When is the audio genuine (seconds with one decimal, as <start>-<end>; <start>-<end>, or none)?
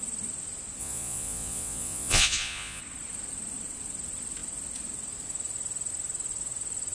0.0-0.8; 2.8-6.9